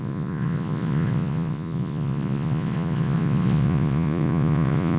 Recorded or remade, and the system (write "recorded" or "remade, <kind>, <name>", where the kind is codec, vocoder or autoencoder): remade, vocoder, Vocos